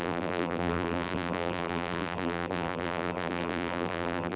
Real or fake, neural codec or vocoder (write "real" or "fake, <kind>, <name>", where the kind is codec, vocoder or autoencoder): fake, vocoder, BigVGAN v2